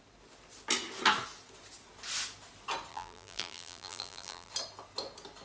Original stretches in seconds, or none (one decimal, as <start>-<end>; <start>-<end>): 0.0-2.9; 4.5-5.4